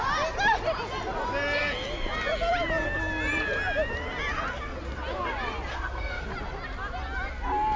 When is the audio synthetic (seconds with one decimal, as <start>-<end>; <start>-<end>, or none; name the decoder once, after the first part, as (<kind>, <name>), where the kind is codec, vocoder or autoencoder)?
5.7-6.2 (codec, SNAC)